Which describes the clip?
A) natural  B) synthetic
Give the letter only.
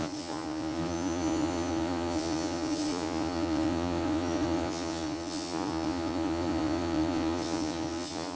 B